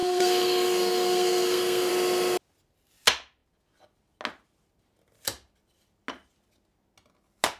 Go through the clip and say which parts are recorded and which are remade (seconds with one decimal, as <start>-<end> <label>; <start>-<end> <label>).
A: 0.0-1.9 remade; 1.9-7.6 recorded

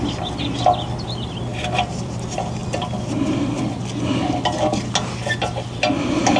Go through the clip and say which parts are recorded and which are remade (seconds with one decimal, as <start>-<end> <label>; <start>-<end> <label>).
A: 0.0-1.5 recorded; 1.5-2.1 remade; 2.1-2.6 recorded; 2.6-3.8 remade; 3.8-6.4 recorded